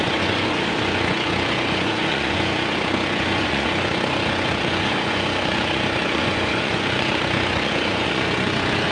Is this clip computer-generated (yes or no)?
yes